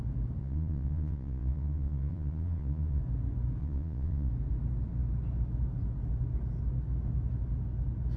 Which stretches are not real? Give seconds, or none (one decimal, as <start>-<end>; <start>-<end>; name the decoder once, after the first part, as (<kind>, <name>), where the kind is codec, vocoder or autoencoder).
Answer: 0.4-3.0 (vocoder, Vocos); 3.6-4.3